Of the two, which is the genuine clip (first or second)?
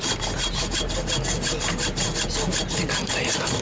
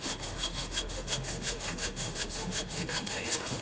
first